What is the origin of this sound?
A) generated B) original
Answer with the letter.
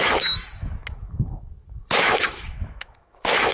A